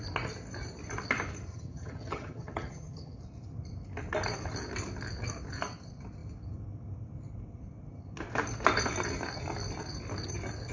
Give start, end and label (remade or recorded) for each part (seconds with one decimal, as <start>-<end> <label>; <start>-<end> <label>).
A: 0.0-1.5 recorded; 1.5-3.2 remade; 3.2-10.7 recorded